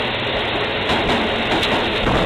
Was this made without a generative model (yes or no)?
yes